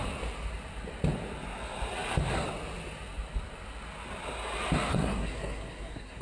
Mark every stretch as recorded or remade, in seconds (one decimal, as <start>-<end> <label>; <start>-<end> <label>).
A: 0.0-4.9 recorded; 4.9-6.2 remade